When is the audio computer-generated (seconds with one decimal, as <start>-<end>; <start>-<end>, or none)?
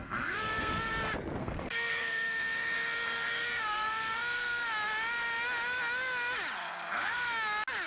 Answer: 0.0-0.9; 1.4-4.6; 6.6-7.3